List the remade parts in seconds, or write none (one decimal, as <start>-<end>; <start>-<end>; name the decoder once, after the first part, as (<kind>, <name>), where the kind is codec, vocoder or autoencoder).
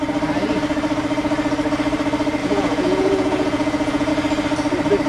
2.4-4.1 (vocoder, Vocos)